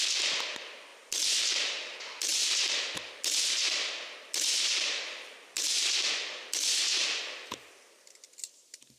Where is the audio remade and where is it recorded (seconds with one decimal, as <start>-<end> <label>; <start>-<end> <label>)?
0.0-9.0 recorded